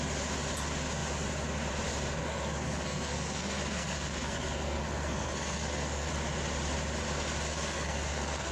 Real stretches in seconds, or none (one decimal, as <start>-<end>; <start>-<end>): 0.0-2.2; 6.1-7.5